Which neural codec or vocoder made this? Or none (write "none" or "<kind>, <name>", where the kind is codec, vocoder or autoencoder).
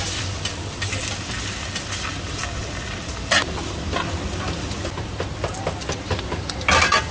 none